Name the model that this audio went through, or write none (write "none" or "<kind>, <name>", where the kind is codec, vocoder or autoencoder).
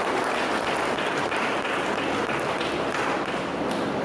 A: none